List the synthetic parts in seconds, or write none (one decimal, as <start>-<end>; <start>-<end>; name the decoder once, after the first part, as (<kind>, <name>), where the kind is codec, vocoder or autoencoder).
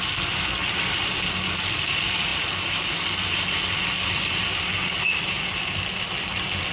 none